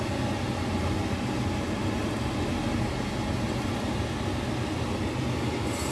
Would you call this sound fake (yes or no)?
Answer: no